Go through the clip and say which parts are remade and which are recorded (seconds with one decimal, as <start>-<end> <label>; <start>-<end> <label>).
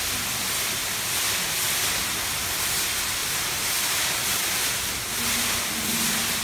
0.0-3.2 recorded; 3.2-5.1 remade; 5.1-6.4 recorded